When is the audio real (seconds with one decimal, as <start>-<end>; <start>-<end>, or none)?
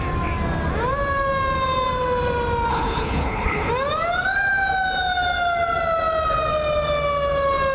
0.0-2.7; 3.7-7.7